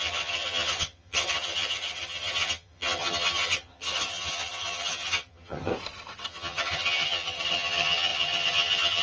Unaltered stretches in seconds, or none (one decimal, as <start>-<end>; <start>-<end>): 5.7-6.3